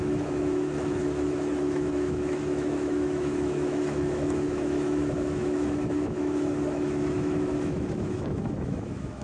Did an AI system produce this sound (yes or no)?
yes